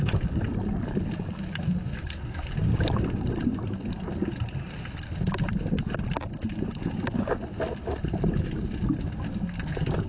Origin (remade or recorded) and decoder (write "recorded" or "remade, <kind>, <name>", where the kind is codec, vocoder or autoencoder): recorded